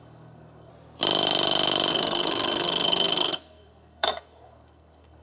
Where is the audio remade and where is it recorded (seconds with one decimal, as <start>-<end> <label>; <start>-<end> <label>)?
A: 0.0-0.7 remade; 0.7-1.9 recorded; 1.9-5.2 remade